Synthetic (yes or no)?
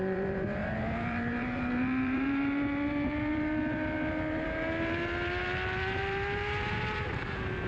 yes